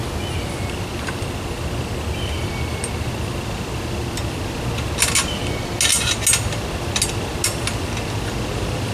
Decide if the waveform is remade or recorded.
recorded